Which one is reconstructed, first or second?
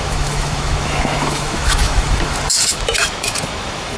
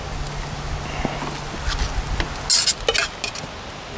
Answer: first